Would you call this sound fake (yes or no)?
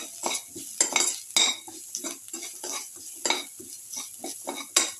no